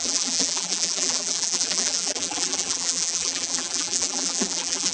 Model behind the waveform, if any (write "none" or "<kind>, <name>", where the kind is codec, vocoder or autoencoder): vocoder, BigVGAN v2